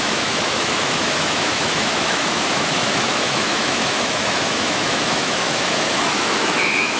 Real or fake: fake